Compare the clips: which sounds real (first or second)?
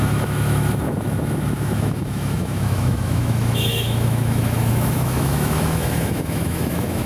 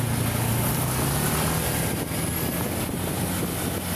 second